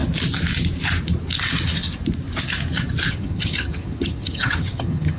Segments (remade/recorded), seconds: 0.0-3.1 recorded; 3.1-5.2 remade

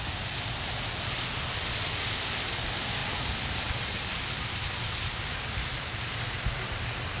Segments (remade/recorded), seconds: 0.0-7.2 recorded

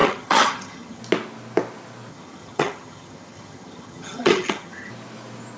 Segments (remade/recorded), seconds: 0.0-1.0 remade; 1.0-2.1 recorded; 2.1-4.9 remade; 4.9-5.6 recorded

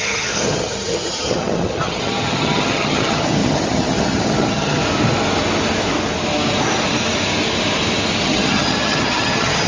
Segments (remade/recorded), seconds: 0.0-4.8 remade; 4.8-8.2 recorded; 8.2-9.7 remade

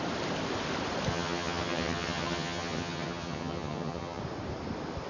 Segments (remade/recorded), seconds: 0.0-1.1 recorded; 1.1-4.2 remade; 4.2-5.1 recorded

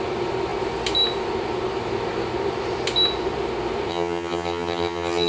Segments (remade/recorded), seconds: 0.0-3.9 recorded; 3.9-5.3 remade

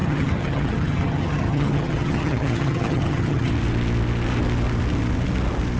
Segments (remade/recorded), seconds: 0.0-3.5 remade; 3.5-5.8 recorded

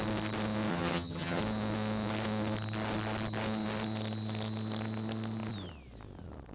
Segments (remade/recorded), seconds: 0.0-0.7 recorded; 0.7-1.4 remade; 1.4-6.5 recorded